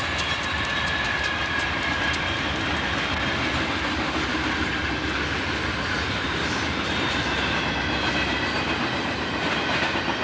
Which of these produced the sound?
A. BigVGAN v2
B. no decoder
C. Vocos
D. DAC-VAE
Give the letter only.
B